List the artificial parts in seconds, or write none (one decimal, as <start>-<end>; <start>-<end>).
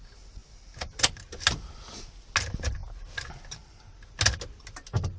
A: none